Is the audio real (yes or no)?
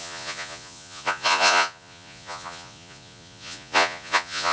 no